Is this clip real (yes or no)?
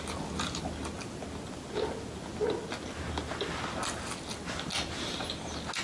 yes